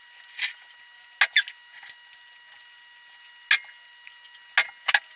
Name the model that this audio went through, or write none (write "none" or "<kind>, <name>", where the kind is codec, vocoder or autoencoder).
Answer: none